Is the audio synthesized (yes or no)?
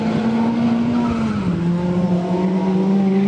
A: no